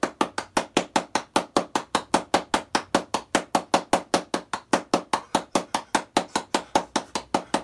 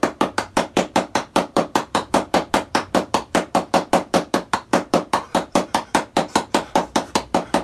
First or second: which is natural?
first